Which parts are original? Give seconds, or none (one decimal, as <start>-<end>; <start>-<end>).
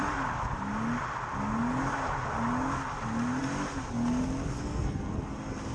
0.0-4.5; 5.3-5.7